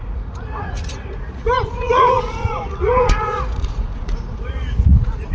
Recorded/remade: remade